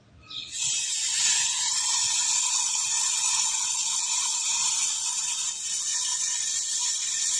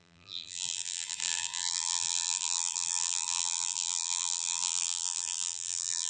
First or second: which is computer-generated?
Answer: second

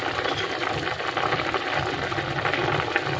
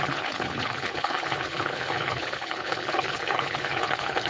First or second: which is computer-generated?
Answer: second